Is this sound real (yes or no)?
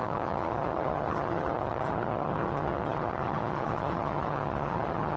no